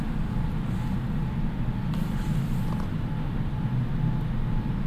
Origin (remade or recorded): recorded